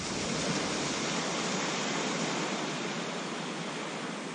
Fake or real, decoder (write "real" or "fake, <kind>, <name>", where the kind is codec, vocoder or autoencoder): real